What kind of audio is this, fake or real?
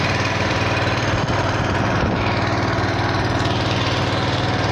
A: real